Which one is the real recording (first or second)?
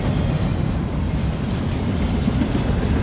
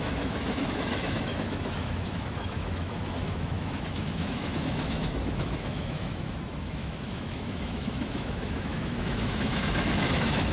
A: first